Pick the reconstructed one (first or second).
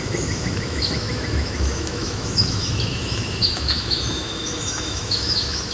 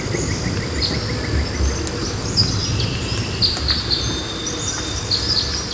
first